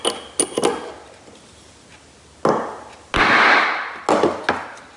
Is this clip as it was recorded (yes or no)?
yes